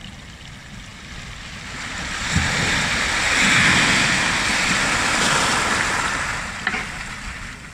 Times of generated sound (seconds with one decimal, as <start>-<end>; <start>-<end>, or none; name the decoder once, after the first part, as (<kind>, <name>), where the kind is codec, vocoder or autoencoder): none